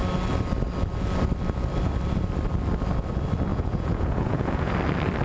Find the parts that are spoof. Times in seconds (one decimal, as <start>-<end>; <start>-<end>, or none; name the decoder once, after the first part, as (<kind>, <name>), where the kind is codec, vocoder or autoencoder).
3.5-4.7 (vocoder, Vocos)